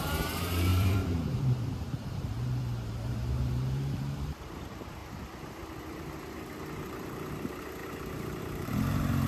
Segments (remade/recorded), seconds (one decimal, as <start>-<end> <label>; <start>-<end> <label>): 0.0-5.0 remade; 5.0-7.3 recorded; 7.3-9.3 remade